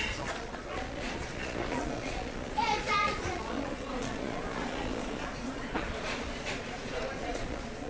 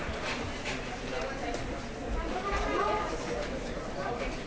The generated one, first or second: first